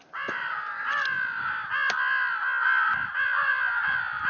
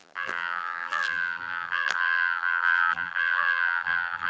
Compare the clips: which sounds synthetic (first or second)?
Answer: second